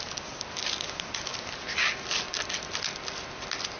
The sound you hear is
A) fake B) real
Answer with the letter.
B